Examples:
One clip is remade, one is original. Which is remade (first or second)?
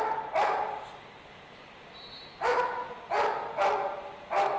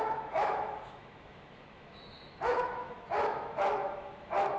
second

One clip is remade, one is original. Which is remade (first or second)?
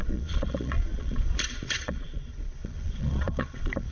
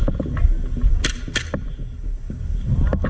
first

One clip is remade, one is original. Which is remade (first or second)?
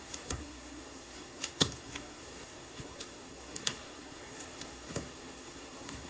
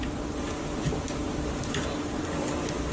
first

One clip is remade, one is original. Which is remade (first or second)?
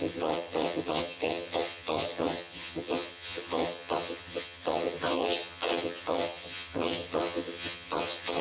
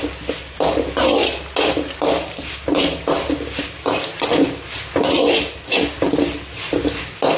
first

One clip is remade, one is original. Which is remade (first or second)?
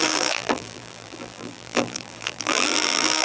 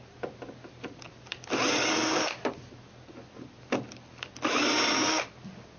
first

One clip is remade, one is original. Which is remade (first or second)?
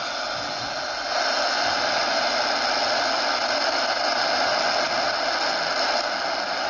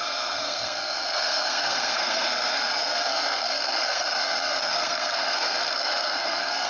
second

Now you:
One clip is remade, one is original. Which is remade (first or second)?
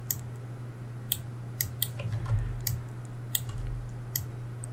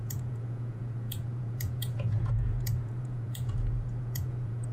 second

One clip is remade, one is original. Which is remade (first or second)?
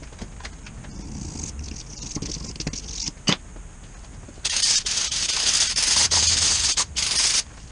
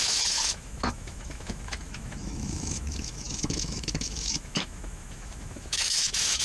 second